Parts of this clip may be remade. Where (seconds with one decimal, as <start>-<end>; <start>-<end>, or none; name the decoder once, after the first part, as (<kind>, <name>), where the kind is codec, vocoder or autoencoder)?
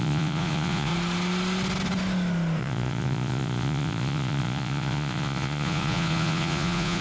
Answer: 0.0-0.9 (vocoder, Vocos); 2.6-7.0